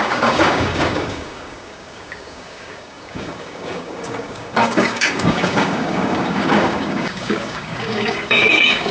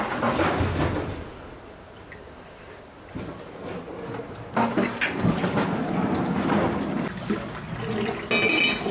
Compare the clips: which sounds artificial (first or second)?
first